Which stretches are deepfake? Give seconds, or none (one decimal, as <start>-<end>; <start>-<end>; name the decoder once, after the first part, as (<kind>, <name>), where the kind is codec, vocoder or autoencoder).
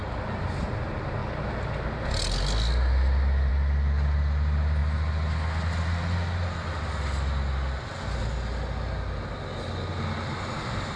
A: none